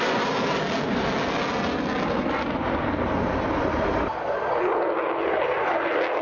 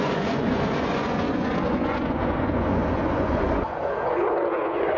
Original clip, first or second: first